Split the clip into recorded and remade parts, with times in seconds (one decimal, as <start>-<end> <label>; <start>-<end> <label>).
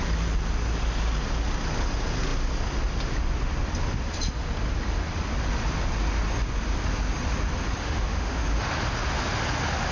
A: 0.0-7.8 recorded; 7.8-8.4 remade; 8.4-9.9 recorded